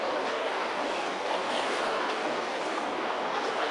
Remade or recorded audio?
remade